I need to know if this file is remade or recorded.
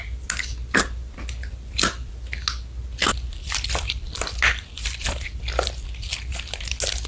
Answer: recorded